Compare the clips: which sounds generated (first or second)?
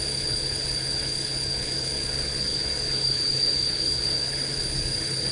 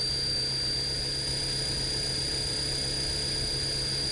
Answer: first